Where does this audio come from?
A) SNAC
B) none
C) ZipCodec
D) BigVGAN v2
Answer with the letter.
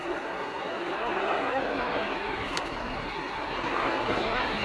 A